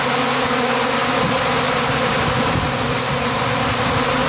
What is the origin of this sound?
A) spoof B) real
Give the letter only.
B